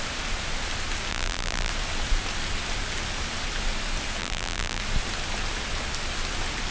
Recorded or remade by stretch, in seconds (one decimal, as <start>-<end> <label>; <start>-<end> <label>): 0.0-1.1 recorded; 1.1-1.7 remade; 1.7-4.2 recorded; 4.2-4.8 remade; 4.8-6.7 recorded